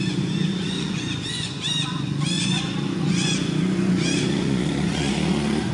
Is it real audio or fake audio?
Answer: fake